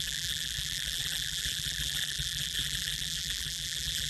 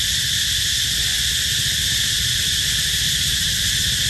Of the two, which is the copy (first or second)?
first